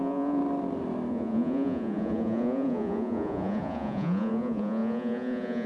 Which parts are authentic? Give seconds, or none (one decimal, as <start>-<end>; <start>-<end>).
0.4-1.1